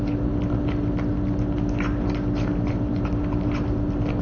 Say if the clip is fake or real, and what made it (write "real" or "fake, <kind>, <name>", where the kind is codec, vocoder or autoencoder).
real